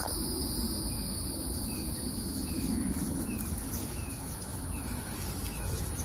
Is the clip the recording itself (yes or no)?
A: no